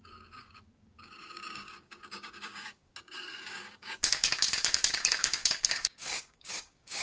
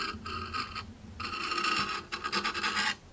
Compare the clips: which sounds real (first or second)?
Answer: second